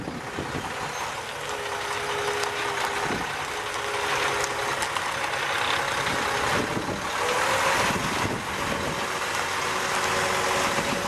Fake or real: real